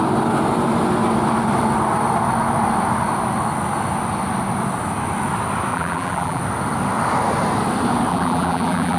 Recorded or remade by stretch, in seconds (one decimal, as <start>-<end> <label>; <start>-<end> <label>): 0.0-5.7 recorded; 5.7-6.4 remade; 6.4-8.1 recorded; 8.1-9.0 remade